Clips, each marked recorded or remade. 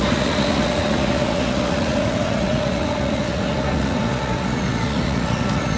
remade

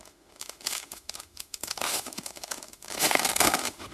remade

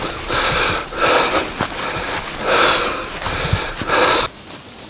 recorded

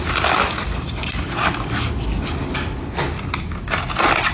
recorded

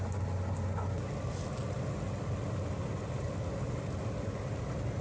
recorded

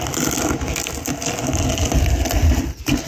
recorded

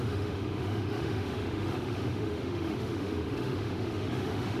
remade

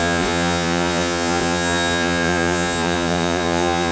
remade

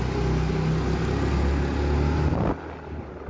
recorded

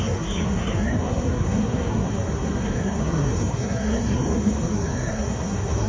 remade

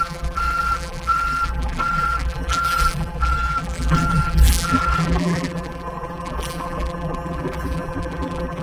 remade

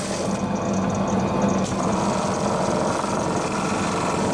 recorded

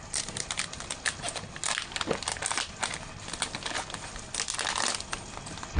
recorded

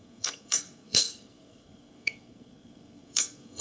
remade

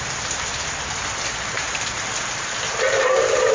recorded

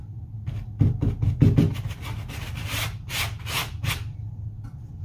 recorded